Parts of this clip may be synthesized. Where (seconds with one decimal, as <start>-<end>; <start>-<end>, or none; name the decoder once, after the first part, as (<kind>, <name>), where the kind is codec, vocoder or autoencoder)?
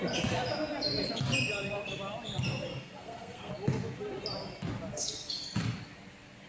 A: 2.7-3.5 (codec, SNAC); 4.9-5.4